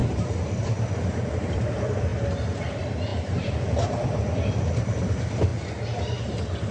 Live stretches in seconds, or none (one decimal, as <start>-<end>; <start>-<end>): 0.0-0.6; 2.1-2.7; 5.5-6.7